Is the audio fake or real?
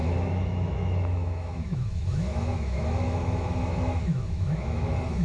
fake